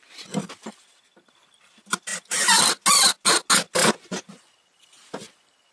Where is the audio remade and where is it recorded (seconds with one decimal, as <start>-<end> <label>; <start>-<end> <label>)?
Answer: 0.0-3.8 recorded; 3.8-4.4 remade; 4.4-5.7 recorded